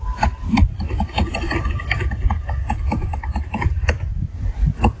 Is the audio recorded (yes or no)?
no